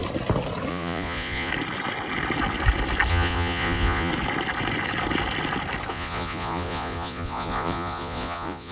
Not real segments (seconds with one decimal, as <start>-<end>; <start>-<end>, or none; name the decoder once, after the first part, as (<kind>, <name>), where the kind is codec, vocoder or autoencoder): 0.7-1.5 (vocoder, Vocos); 3.1-4.1; 5.9-8.7